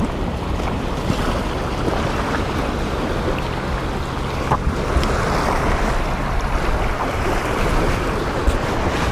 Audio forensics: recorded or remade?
recorded